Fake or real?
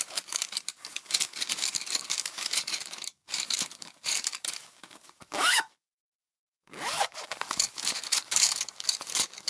fake